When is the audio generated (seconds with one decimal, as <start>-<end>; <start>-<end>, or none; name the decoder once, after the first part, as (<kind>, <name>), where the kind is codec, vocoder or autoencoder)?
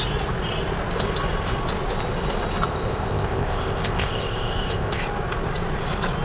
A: 2.7-5.0 (codec, ZipCodec)